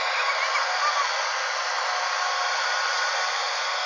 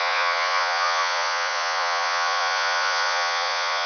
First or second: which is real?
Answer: first